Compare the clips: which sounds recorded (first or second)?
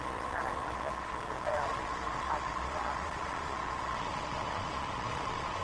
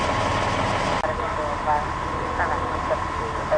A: second